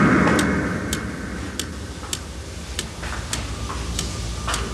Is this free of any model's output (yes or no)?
yes